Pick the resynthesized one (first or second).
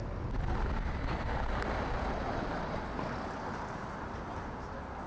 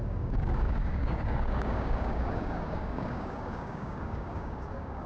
second